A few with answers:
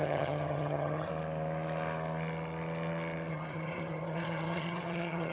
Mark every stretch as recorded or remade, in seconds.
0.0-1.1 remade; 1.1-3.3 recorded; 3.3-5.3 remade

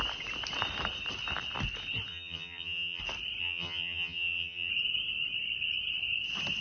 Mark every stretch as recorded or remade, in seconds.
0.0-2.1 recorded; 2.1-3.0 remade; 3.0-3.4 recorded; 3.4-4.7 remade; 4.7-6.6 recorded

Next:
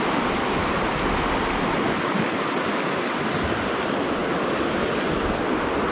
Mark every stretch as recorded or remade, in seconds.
0.0-5.9 recorded